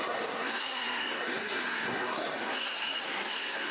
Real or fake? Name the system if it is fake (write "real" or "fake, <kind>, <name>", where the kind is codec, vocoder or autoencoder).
fake, codec, SNAC